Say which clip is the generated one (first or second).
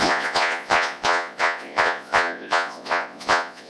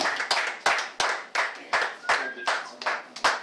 first